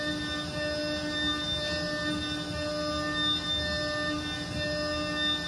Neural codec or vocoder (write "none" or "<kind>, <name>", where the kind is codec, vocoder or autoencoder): none